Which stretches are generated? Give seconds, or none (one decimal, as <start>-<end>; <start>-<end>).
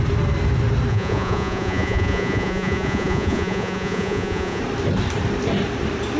0.9-4.6